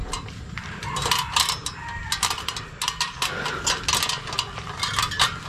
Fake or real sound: real